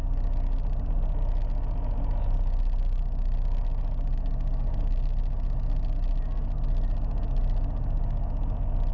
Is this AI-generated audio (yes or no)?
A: no